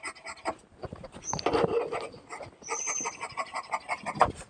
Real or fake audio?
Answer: real